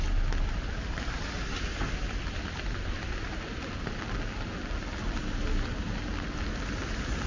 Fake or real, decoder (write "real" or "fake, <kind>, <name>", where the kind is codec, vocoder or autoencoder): real